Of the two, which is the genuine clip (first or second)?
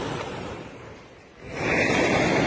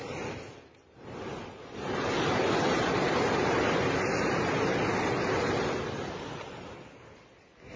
second